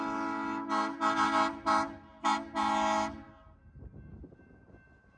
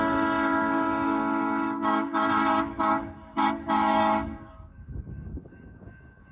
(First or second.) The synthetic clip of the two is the second